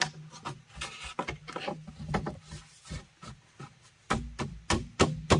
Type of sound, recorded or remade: recorded